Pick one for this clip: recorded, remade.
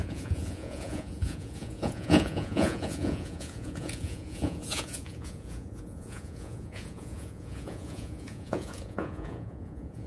remade